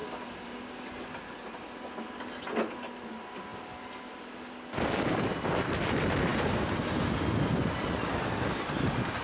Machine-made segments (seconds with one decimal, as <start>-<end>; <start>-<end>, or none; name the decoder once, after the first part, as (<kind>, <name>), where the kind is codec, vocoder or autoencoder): none